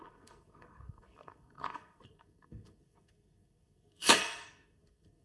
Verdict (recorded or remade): remade